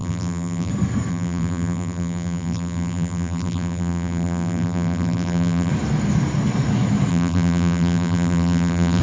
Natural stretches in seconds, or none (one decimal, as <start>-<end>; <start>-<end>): 0.7-1.1; 5.7-7.1